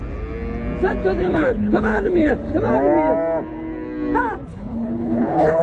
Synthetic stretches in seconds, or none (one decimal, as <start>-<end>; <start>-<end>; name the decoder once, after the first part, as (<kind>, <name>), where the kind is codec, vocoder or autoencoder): 1.2-2.3 (codec, HILCodec); 4.5-5.6